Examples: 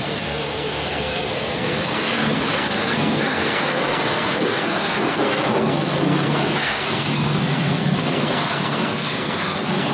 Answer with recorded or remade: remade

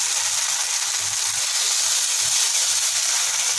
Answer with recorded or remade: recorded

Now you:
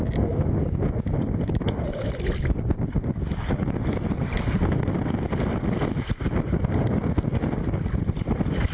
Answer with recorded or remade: recorded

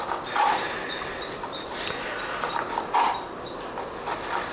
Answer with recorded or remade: recorded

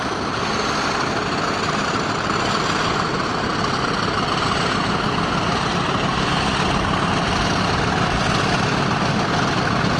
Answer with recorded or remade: recorded